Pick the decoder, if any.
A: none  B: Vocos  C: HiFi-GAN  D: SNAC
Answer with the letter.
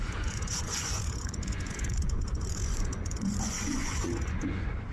B